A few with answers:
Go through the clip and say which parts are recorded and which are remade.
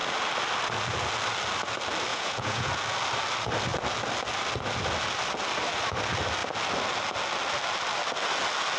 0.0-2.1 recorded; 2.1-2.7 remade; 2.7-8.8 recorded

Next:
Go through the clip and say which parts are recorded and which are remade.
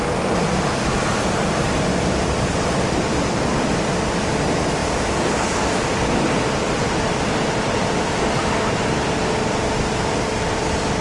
0.0-4.8 remade; 4.8-5.4 recorded; 5.4-11.0 remade